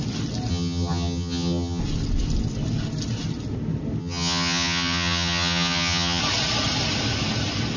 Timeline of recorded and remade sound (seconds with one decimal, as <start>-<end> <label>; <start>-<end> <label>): 0.0-0.5 recorded; 0.5-1.8 remade; 1.8-4.0 recorded; 4.0-6.2 remade; 6.2-7.8 recorded